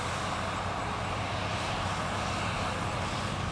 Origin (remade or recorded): recorded